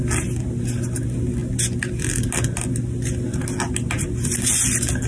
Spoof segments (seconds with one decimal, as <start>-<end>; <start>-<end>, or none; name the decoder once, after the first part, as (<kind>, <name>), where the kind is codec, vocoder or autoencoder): none